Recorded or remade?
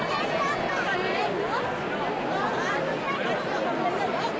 recorded